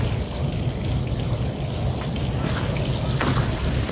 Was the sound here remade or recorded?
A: recorded